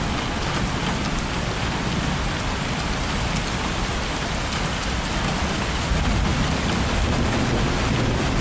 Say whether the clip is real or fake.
real